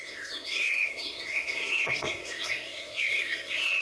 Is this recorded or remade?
remade